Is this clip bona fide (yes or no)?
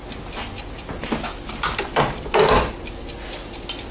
yes